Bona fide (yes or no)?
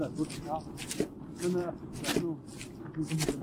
yes